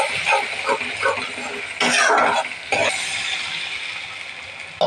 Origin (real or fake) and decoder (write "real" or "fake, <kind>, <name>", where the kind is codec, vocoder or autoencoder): real